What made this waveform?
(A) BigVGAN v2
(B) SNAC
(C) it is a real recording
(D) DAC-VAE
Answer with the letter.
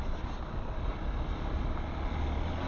C